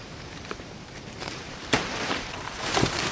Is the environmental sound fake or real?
fake